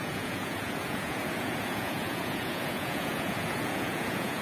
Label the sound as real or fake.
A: fake